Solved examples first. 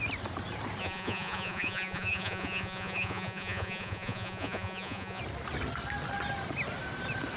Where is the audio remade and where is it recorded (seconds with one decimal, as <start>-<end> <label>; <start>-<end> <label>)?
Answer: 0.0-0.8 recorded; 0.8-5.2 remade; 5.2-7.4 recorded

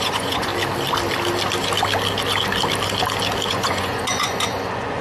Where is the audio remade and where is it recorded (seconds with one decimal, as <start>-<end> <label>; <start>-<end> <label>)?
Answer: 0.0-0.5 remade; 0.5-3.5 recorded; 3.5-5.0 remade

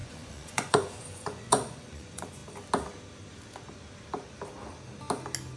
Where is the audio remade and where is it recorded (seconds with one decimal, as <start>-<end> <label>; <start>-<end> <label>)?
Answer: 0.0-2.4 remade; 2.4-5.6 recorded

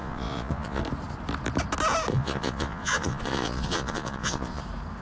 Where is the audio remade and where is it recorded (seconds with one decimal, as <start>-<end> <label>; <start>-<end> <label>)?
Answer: 0.0-0.8 remade; 0.8-2.1 recorded; 2.1-4.6 remade; 4.6-5.0 recorded